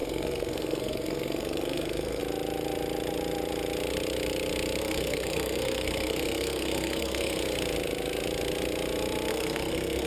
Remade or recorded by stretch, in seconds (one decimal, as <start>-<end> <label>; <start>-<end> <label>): 0.0-2.2 remade; 2.2-4.8 recorded; 4.8-7.4 remade; 7.4-9.3 recorded; 9.3-10.1 remade